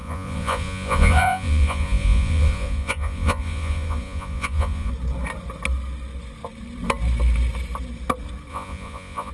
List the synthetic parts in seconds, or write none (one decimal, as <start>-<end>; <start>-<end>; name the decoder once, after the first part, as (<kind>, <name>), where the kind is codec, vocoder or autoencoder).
0.0-4.9 (vocoder, Vocos); 8.5-9.3

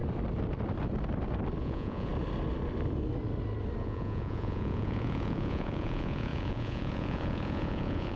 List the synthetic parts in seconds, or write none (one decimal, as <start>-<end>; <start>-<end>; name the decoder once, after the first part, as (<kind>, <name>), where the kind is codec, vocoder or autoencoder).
1.6-2.1 (vocoder, Vocos); 3.8-8.2